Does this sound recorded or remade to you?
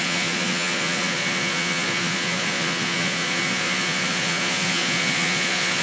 remade